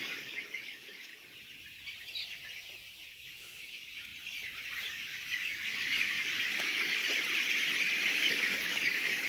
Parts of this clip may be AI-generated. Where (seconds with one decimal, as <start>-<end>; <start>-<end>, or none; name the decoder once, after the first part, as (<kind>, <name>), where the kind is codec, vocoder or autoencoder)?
0.0-1.1 (codec, DAC); 3.1-4.1; 4.9-7.0; 8.1-9.3